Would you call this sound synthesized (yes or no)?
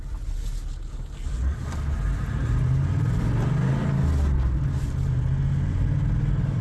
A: no